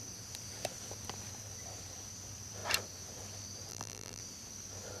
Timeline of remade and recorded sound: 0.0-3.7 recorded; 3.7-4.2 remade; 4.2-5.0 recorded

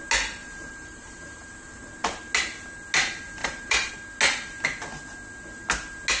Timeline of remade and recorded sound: 0.0-0.4 recorded; 0.4-2.2 remade; 2.2-3.4 recorded; 3.4-3.9 remade; 3.9-6.2 recorded

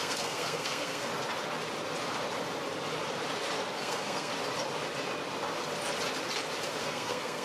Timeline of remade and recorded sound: 0.0-1.1 remade; 1.1-3.8 recorded; 3.8-4.3 remade; 4.3-6.8 recorded; 6.8-7.4 remade

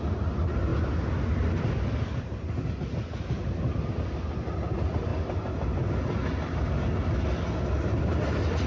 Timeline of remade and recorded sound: 0.0-8.7 recorded

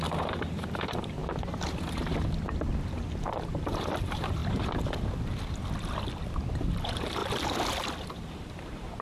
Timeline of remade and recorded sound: 0.0-1.2 remade; 1.2-2.7 recorded; 2.7-4.4 remade; 4.4-6.7 recorded; 6.7-7.2 remade; 7.2-8.1 recorded; 8.1-9.0 remade

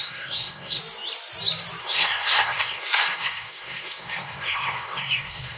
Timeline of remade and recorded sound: 0.0-0.8 remade; 0.8-1.8 recorded; 1.8-5.6 remade